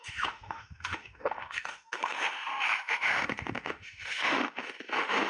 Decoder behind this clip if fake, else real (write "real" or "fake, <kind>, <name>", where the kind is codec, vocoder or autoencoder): fake, autoencoder, DAC-VAE